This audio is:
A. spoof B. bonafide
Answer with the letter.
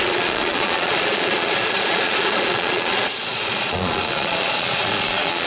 A